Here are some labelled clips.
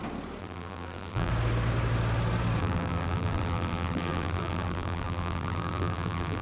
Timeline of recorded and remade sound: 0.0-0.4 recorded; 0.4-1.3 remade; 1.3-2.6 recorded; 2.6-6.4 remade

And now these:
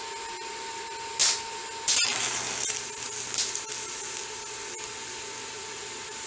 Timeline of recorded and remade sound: 0.0-6.3 recorded

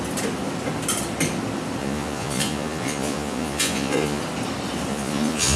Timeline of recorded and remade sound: 0.0-1.8 recorded; 1.8-4.2 remade; 4.2-4.9 recorded; 4.9-5.6 remade

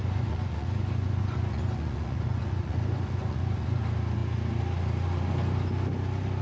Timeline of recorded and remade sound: 0.0-3.8 remade; 3.8-6.4 recorded

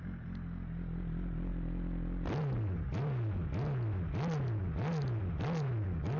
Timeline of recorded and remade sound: 0.0-6.2 recorded